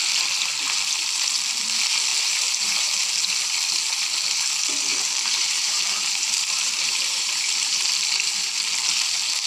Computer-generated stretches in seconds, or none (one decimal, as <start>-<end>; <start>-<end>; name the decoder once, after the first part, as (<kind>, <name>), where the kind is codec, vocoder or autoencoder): 2.1-2.9 (vocoder, BigVGAN v2); 4.9-7.9